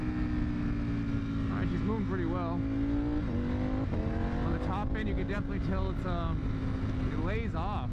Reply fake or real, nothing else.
real